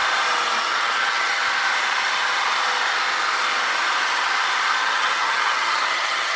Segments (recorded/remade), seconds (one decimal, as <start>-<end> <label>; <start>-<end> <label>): 0.0-0.6 recorded; 0.6-1.4 remade; 1.4-4.8 recorded; 4.8-6.4 remade